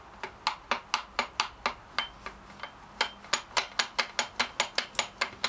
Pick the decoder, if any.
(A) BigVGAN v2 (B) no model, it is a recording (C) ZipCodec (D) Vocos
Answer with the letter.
B